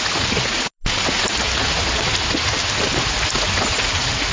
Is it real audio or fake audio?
real